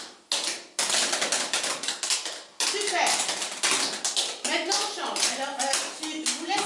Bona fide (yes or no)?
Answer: yes